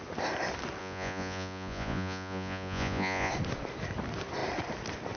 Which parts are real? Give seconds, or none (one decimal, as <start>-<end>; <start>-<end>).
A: 0.0-0.8; 3.3-5.2